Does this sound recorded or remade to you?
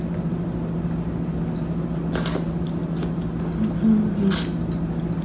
recorded